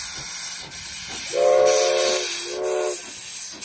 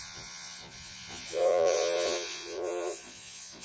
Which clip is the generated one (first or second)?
second